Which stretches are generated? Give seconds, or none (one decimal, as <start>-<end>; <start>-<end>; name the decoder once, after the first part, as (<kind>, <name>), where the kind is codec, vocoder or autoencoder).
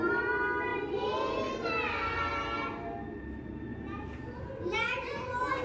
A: none